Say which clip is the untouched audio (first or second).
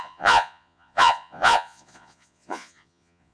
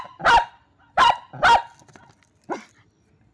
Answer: second